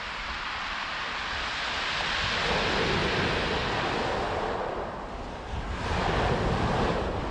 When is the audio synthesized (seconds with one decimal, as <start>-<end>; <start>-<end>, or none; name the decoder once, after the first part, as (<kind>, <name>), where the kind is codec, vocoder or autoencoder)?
0.0-0.9 (vocoder, BigVGAN v2)